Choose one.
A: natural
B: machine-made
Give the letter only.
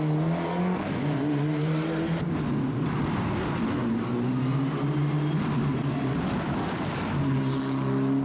A